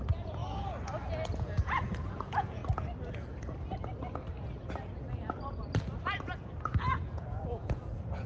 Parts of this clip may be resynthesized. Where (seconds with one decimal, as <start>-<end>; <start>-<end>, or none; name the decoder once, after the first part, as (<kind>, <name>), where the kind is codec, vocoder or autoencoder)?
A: 0.0-0.4 (vocoder, Vocos); 1.4-2.6; 6.6-8.3